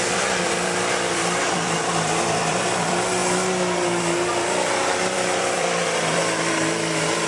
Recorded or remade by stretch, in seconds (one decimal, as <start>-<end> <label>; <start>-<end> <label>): 0.0-3.2 remade; 3.2-4.0 recorded; 4.0-7.3 remade